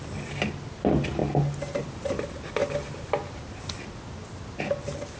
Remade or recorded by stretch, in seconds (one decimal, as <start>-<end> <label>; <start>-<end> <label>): 0.0-5.2 recorded